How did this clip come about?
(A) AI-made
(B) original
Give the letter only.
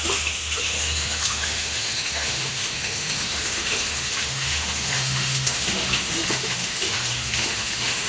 A